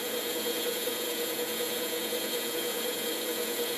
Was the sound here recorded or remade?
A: remade